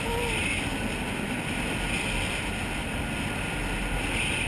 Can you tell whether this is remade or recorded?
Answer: recorded